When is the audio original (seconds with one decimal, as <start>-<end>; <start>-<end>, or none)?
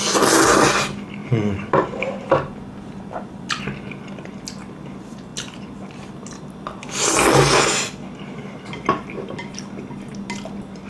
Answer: 0.0-1.2; 3.5-10.9